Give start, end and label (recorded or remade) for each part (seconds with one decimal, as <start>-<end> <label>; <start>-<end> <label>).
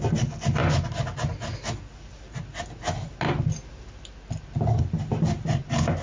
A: 0.0-6.0 recorded